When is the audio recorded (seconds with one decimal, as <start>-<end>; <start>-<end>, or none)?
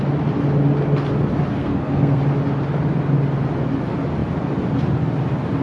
0.0-1.5; 2.2-5.6